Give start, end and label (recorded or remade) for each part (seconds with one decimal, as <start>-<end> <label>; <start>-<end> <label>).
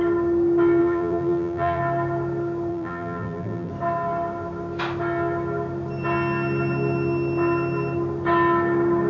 0.0-0.8 recorded; 0.8-1.8 remade; 1.8-2.7 recorded; 2.7-3.7 remade; 3.7-9.1 recorded